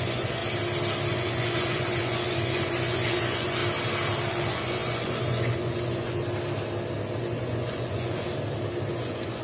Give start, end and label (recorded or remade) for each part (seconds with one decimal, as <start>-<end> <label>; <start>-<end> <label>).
0.0-0.4 remade; 0.4-1.1 recorded; 1.1-3.6 remade; 3.6-4.3 recorded; 4.3-6.2 remade; 6.2-7.2 recorded; 7.2-8.3 remade; 8.3-8.9 recorded; 8.9-9.4 remade